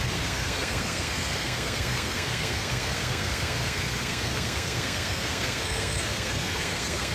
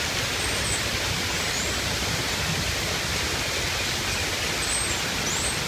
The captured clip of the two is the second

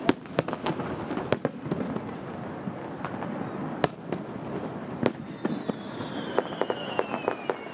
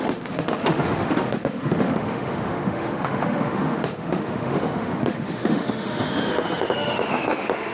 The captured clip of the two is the first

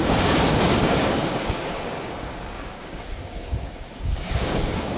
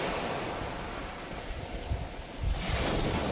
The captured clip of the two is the second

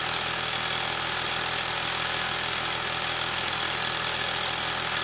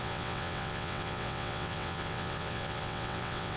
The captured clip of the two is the first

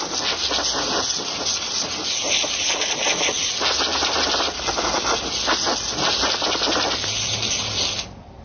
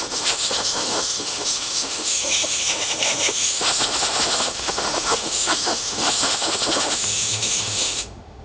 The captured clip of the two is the first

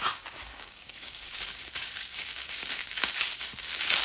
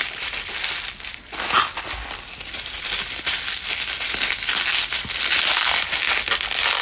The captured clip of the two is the second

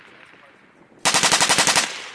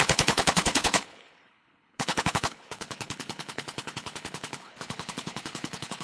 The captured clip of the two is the first